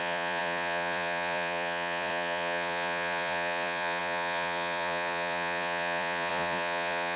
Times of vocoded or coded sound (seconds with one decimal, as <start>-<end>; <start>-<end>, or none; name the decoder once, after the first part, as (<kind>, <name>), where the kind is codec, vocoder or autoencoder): 0.0-7.2 (vocoder, Vocos)